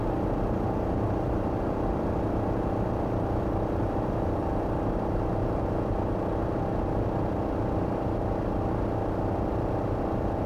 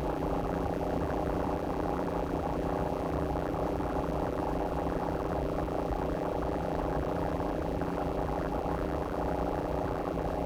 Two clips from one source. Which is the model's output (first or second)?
second